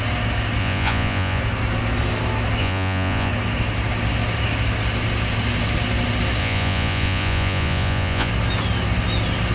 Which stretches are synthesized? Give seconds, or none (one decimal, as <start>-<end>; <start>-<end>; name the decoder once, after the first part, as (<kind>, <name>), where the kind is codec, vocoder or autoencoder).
0.6-1.4 (vocoder, Vocos); 2.6-3.3; 6.4-8.3